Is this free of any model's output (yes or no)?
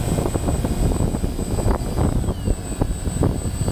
yes